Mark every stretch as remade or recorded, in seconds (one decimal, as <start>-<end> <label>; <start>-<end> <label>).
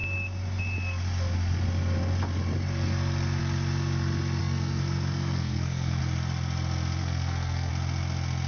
0.0-4.4 recorded; 4.4-6.0 remade; 6.0-7.0 recorded; 7.0-7.7 remade; 7.7-8.5 recorded